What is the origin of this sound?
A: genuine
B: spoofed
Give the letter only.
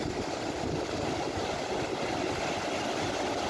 A